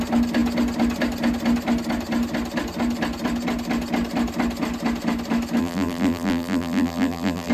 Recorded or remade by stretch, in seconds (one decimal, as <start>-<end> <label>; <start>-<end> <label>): 0.0-5.6 recorded; 5.6-7.5 remade